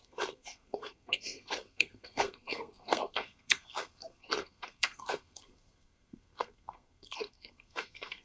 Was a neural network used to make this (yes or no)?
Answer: yes